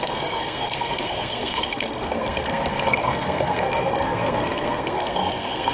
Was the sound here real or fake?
fake